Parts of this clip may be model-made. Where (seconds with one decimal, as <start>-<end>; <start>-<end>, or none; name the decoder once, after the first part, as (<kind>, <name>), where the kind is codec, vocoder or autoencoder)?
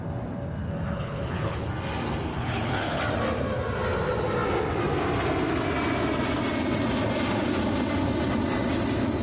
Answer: 0.7-1.7 (codec, HILCodec); 2.3-3.0